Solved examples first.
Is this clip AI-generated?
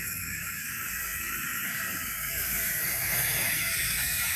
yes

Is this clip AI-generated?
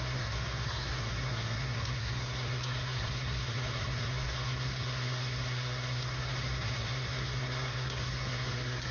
yes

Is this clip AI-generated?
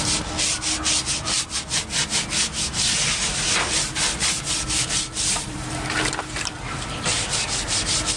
yes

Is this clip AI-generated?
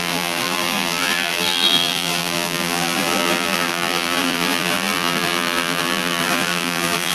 yes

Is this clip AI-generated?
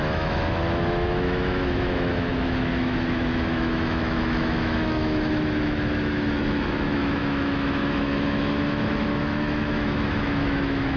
yes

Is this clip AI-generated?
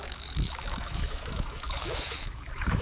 yes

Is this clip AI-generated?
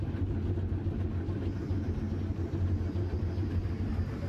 no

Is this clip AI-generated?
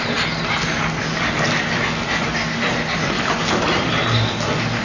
no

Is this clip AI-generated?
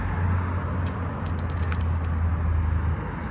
no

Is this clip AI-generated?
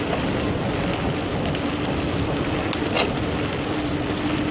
no